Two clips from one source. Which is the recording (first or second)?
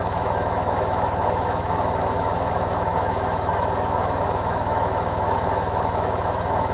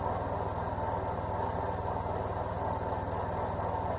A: second